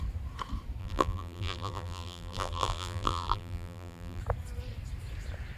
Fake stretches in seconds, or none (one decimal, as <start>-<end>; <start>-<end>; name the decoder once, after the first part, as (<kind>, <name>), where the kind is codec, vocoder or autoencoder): 0.8-4.2 (vocoder, BigVGAN v2)